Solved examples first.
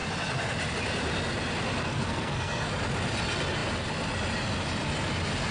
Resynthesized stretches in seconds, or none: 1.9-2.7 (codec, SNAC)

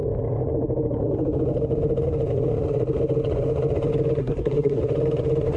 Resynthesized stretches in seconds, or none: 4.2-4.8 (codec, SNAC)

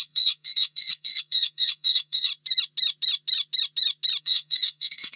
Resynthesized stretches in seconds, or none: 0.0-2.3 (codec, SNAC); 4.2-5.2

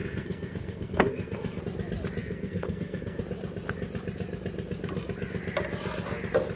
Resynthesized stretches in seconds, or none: 0.0-1.6 (codec, SNAC); 2.2-3.2

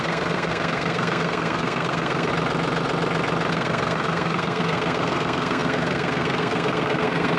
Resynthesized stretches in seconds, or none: 0.0-2.3 (codec, SNAC); 3.5-7.4

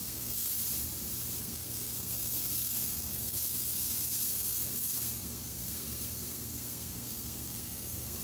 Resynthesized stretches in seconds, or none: 0.0-0.6 (codec, SNAC); 1.4-8.2

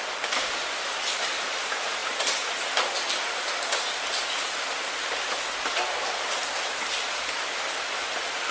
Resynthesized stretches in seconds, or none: none

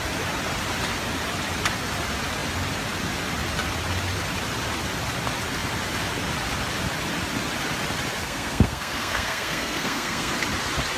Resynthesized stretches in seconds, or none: 8.2-10.3 (codec, SNAC)